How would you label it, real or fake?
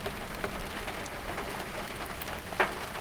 real